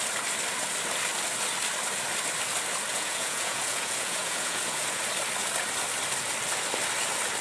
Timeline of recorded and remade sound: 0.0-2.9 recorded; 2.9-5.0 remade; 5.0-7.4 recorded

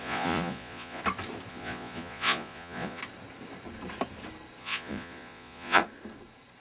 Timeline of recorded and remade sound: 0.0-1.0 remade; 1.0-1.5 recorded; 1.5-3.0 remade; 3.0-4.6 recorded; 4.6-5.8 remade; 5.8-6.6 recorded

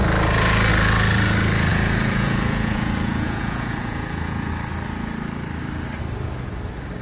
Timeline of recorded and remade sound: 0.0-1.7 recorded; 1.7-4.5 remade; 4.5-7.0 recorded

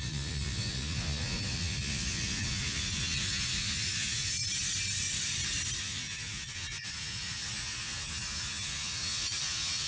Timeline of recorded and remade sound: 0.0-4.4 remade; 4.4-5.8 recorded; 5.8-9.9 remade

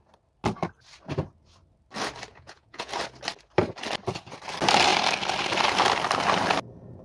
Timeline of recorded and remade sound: 0.0-2.3 recorded; 2.3-2.9 remade; 2.9-7.0 recorded

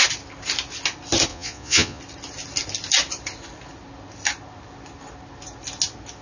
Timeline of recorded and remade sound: 0.0-1.3 recorded; 1.3-2.0 remade; 2.0-6.2 recorded

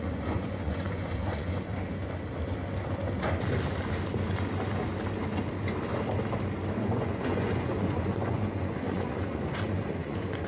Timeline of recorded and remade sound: 0.0-1.7 remade; 1.7-6.8 recorded; 6.8-10.5 remade